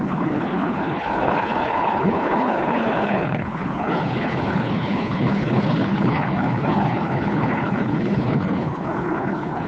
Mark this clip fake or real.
fake